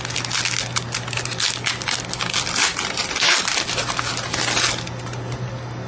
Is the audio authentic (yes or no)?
yes